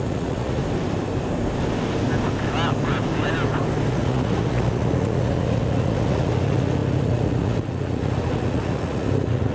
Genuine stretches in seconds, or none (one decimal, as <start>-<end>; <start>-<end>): 0.6-3.9